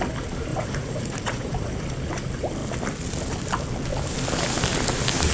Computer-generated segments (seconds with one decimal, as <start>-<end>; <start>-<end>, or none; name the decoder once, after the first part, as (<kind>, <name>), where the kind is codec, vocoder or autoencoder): 0.5-1.5 (vocoder, Vocos)